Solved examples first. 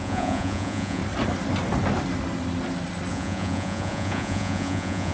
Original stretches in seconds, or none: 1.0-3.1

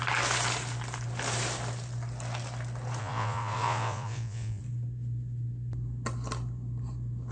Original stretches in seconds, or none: 0.0-3.0; 4.6-7.3